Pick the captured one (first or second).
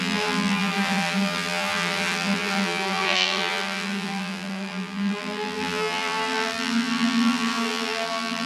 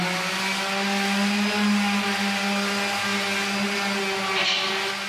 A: second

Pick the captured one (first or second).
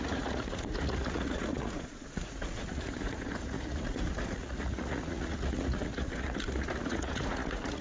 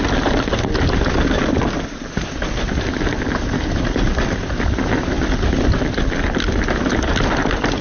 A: second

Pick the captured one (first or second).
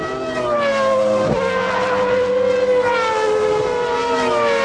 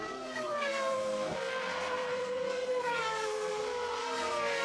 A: first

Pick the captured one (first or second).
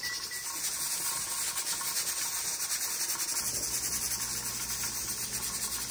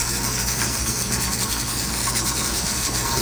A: first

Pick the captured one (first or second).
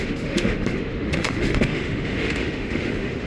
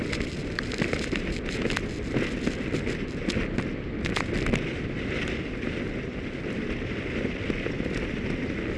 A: second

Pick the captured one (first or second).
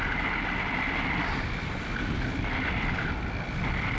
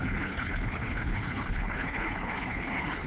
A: first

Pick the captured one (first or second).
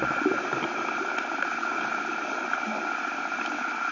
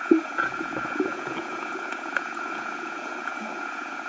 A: first